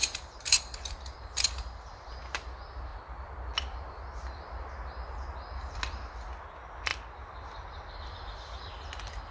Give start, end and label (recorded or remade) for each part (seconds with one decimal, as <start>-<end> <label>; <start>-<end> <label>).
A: 0.0-2.2 remade; 2.2-9.3 recorded